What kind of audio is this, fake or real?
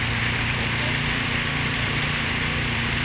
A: fake